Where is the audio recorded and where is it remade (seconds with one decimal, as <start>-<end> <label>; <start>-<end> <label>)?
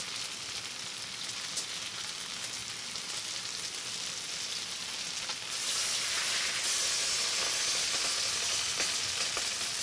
0.0-2.6 recorded; 2.6-4.8 remade; 4.8-9.8 recorded